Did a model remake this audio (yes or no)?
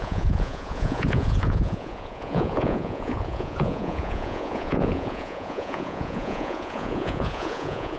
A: yes